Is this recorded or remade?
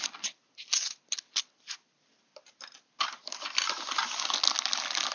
recorded